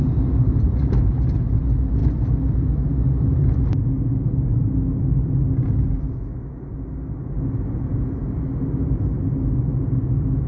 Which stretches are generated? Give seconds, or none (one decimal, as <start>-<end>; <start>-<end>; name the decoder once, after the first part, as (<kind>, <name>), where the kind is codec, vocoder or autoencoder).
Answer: 0.8-1.6 (vocoder, BigVGAN v2); 7.9-8.4